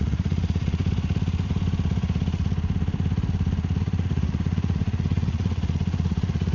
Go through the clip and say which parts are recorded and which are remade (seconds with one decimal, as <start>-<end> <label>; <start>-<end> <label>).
0.0-0.8 remade; 0.8-3.8 recorded; 3.8-6.5 remade